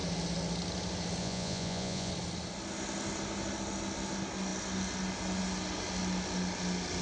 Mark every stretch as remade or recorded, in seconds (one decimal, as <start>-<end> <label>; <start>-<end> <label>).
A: 0.0-1.2 recorded; 1.2-2.1 remade; 2.1-7.0 recorded